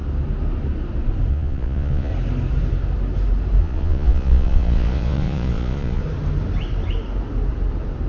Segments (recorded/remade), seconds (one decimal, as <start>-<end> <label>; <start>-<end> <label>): 0.0-1.3 recorded; 1.3-2.1 remade; 2.1-3.6 recorded; 3.6-6.0 remade; 6.0-8.1 recorded